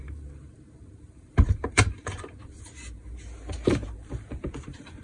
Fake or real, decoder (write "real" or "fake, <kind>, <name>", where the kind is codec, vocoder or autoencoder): fake, vocoder, BigVGAN v2